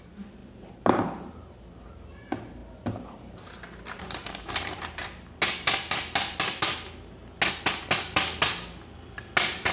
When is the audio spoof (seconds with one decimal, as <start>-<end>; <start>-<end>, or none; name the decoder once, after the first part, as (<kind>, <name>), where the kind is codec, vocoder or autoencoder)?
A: 0.4-1.4 (vocoder, BigVGAN v2)